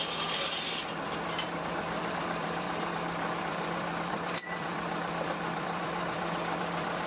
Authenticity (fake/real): fake